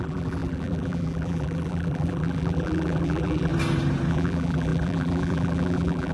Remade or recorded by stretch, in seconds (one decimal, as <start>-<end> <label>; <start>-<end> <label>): 0.0-3.5 remade; 3.5-4.1 recorded; 4.1-6.1 remade